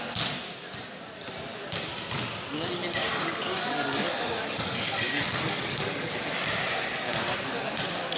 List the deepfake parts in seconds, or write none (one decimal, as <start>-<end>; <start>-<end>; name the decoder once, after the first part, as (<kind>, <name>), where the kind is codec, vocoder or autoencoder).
3.1-6.1 (codec, DAC)